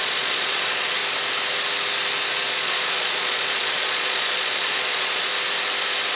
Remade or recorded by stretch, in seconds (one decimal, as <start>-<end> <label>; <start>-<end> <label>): 0.0-1.0 remade; 1.0-2.5 recorded; 2.5-5.3 remade; 5.3-6.2 recorded

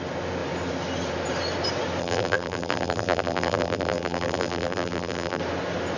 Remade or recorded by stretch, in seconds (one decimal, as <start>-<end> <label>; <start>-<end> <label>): 0.0-2.0 recorded; 2.0-5.4 remade; 5.4-6.0 recorded

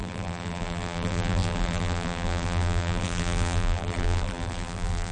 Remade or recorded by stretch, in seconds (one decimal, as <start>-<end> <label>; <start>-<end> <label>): 0.0-5.1 remade

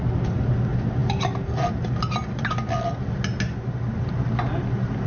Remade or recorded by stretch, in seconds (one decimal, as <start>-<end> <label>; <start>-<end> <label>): 0.0-5.1 recorded

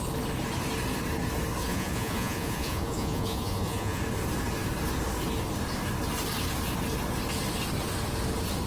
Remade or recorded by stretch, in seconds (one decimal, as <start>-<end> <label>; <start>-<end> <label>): 0.0-1.6 recorded; 1.6-4.0 remade; 4.0-8.7 recorded